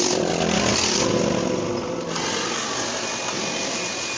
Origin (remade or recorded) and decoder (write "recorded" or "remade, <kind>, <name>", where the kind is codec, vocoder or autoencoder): recorded